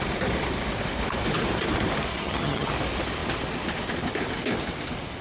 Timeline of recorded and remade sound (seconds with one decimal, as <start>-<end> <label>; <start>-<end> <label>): 0.0-2.1 recorded; 2.1-2.7 remade; 2.7-5.2 recorded